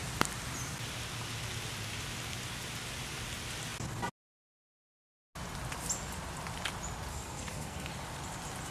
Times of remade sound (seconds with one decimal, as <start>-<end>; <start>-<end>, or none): 7.1-7.9